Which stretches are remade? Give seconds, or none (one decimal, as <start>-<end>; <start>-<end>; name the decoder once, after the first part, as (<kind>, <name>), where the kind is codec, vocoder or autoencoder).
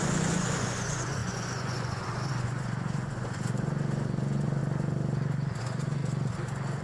0.0-4.6 (vocoder, Vocos); 5.6-6.0